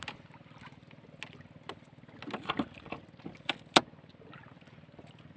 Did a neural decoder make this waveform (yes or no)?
no